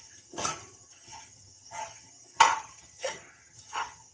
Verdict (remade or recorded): remade